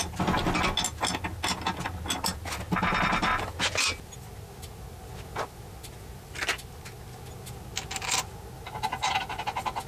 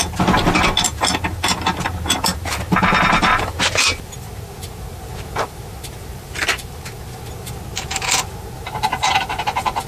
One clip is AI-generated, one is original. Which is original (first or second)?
first